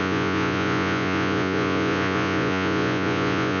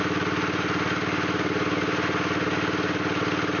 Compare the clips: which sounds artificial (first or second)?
first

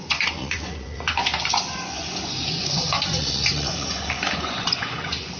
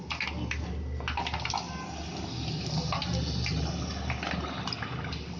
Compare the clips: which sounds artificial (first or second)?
first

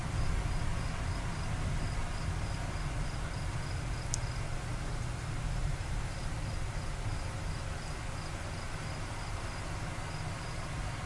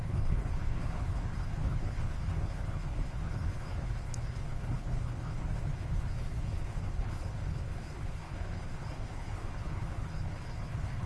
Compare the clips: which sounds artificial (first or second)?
second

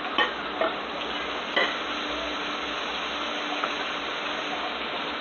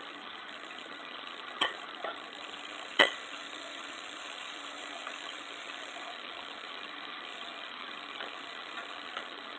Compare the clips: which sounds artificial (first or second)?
second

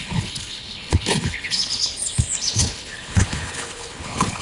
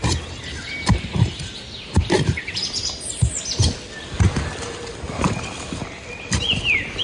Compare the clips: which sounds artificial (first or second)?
first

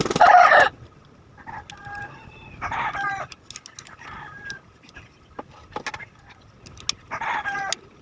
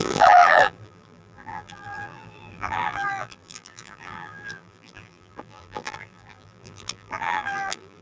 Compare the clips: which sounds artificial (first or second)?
second